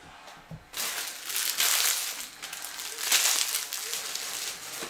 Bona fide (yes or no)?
yes